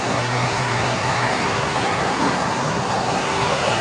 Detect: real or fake fake